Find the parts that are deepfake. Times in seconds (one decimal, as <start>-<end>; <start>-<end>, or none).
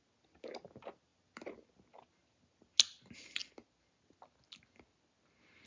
none